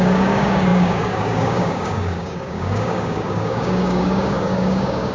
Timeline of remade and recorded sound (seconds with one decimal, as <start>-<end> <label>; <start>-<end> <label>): 0.0-5.1 remade